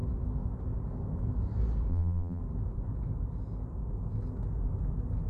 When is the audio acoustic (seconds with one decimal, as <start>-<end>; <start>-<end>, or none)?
0.0-1.9; 2.4-5.3